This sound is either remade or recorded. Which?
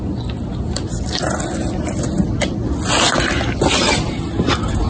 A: recorded